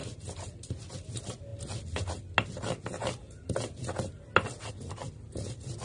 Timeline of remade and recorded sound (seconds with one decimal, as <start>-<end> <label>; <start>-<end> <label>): 0.0-5.8 recorded